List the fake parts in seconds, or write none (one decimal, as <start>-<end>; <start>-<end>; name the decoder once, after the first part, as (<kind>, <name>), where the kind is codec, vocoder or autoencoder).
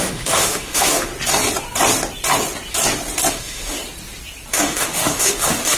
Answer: 0.0-1.1 (autoencoder, DAC-VAE); 3.3-3.8; 4.5-5.8